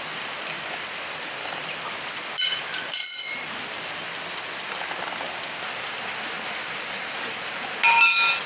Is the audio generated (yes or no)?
no